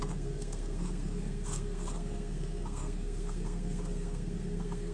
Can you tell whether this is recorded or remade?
remade